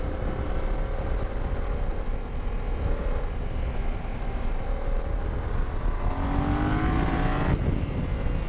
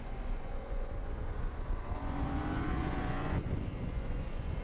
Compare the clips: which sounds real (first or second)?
first